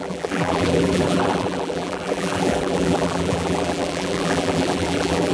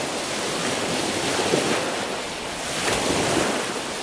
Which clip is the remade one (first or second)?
first